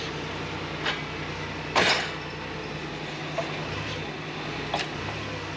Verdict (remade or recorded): recorded